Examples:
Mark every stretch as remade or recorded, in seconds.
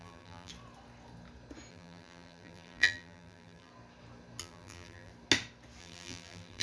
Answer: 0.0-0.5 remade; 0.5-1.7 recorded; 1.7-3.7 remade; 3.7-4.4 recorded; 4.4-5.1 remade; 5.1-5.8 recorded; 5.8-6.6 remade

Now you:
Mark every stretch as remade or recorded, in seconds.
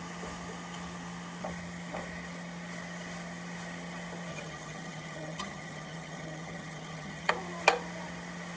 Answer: 0.0-4.3 recorded; 4.3-7.3 remade; 7.3-8.6 recorded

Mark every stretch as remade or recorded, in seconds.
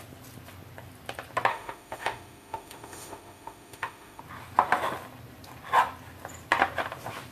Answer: 0.0-1.5 recorded; 1.5-4.2 remade; 4.2-7.3 recorded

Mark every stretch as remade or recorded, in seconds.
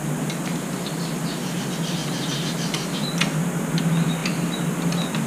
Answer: 0.0-5.3 recorded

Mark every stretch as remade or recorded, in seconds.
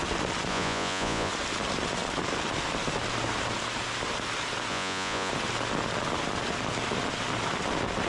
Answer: 0.0-0.5 recorded; 0.5-1.3 remade; 1.3-4.7 recorded; 4.7-5.3 remade; 5.3-8.1 recorded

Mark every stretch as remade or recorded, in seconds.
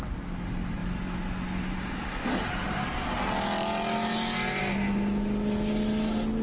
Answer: 0.0-6.4 recorded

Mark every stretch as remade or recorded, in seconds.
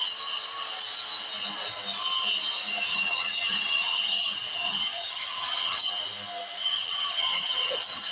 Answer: 0.0-2.9 recorded; 2.9-5.9 remade; 5.9-6.6 recorded; 6.6-8.1 remade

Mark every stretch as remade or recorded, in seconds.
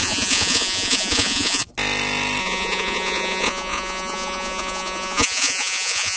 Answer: 0.0-1.7 remade; 1.7-2.4 recorded; 2.4-6.2 remade